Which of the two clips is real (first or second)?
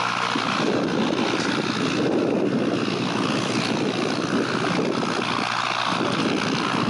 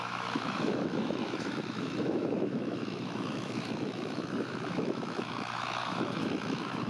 first